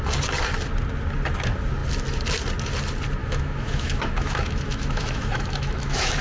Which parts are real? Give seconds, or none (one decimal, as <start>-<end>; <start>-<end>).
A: 0.0-3.2